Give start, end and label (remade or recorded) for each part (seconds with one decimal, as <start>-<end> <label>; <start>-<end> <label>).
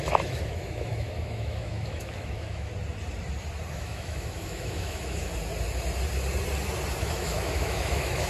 0.0-2.7 remade; 2.7-3.7 recorded; 3.7-5.3 remade; 5.3-7.0 recorded; 7.0-8.3 remade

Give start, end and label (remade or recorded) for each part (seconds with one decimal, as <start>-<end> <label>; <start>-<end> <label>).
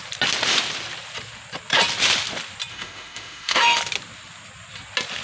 0.0-2.7 recorded; 2.7-3.8 remade; 3.8-5.2 recorded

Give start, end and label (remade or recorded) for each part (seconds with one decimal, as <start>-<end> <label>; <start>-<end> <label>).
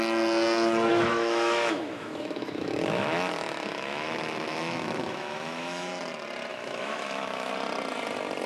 0.0-0.9 recorded; 0.9-5.9 remade; 5.9-6.5 recorded; 6.5-7.5 remade; 7.5-8.5 recorded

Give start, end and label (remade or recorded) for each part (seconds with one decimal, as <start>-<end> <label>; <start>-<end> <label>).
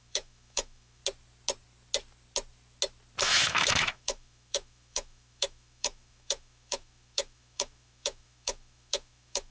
0.0-1.0 remade; 1.0-3.2 recorded; 3.2-9.5 remade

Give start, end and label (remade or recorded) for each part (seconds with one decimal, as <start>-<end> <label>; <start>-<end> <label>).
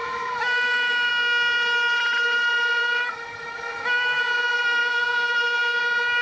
0.0-1.1 remade; 1.1-2.8 recorded; 2.8-4.2 remade; 4.2-4.8 recorded; 4.8-5.8 remade; 5.8-6.2 recorded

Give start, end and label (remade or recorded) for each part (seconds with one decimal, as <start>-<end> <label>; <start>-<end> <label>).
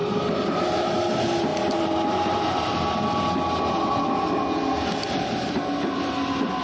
0.0-6.6 recorded